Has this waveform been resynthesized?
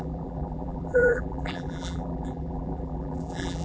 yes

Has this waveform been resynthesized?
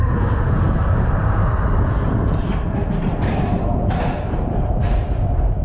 no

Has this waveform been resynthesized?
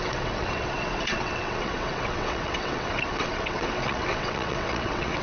yes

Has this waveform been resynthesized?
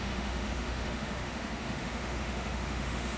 yes